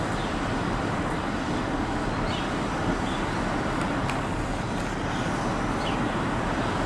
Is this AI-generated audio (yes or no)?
no